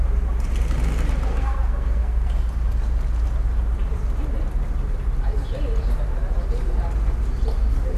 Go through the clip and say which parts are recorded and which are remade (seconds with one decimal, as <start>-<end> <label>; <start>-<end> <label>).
0.0-1.3 recorded; 1.3-2.3 remade; 2.3-8.0 recorded